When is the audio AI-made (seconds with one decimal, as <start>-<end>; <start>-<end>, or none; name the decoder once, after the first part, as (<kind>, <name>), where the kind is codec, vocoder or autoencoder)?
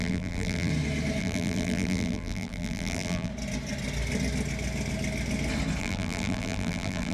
0.0-0.7 (vocoder, BigVGAN v2); 1.2-3.3; 5.8-7.1